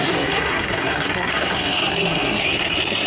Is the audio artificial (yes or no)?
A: yes